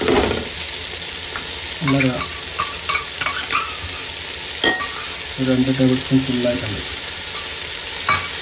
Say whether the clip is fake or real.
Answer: real